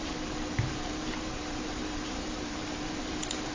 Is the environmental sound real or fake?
fake